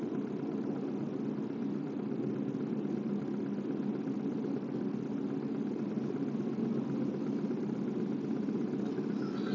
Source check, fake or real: real